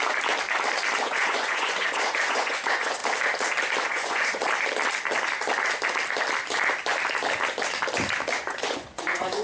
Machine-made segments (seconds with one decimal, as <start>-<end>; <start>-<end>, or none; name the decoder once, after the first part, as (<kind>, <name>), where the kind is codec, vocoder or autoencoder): 1.0-3.0 (vocoder, Vocos); 3.9-4.4; 8.4-9.4